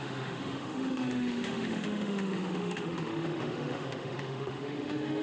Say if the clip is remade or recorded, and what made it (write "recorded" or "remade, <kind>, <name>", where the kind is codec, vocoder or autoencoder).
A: remade, autoencoder, DAC-VAE